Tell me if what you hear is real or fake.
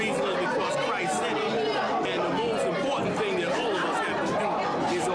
real